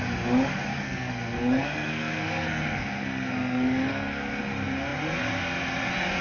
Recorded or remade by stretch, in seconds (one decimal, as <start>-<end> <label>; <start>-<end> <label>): 0.0-0.7 recorded; 0.7-4.4 remade; 4.4-6.2 recorded